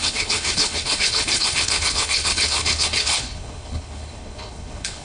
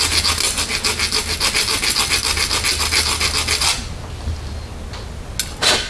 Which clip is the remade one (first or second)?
first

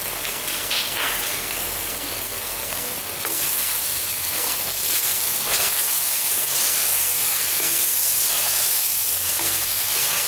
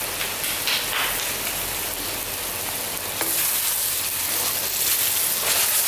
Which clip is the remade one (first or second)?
first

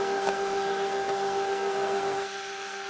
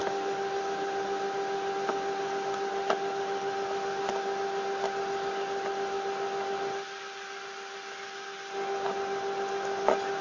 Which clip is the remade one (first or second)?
first